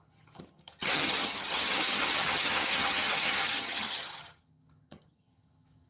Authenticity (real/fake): fake